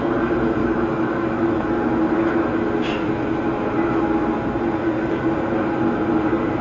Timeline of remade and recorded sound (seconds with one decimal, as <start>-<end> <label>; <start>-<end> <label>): 0.0-0.6 recorded; 0.6-1.7 remade; 1.7-6.6 recorded